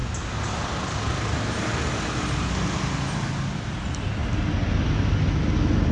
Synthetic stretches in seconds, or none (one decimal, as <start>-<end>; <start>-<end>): none